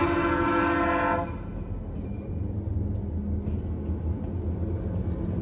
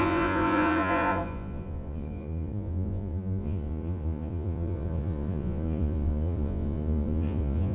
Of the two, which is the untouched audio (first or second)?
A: first